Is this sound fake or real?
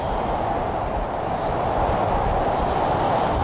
real